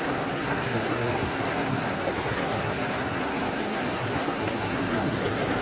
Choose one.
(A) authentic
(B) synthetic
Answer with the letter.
B